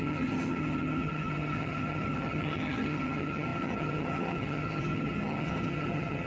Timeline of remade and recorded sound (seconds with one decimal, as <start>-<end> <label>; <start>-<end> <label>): 0.0-6.3 remade